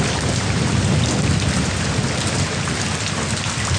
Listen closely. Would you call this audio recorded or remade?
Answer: recorded